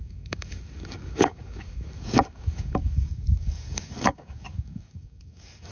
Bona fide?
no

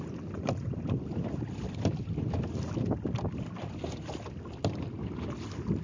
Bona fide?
yes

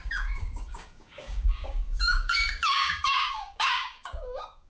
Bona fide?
no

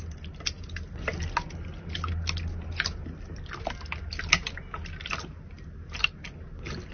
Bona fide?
yes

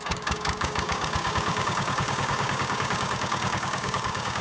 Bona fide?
no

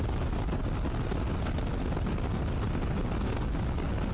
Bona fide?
yes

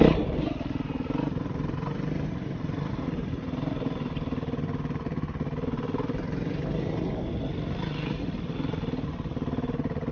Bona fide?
yes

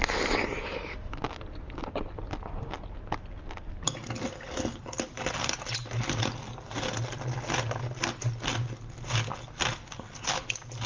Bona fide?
yes